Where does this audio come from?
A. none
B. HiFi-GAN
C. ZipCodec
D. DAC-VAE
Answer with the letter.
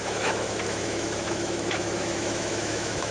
D